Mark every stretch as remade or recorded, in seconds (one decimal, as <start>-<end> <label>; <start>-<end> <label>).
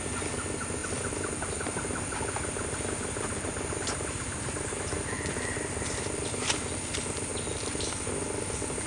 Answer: 0.0-8.9 recorded